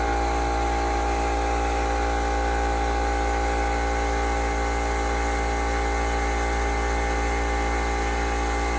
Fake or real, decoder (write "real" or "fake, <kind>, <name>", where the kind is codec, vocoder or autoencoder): real